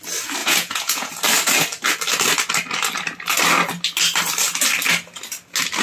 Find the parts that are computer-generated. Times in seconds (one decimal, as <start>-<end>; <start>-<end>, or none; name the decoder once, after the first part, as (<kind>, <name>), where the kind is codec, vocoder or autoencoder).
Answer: 0.4-1.1 (vocoder, Vocos)